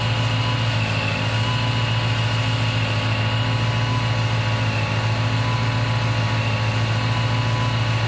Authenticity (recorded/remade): recorded